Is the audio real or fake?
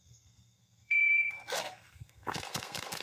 fake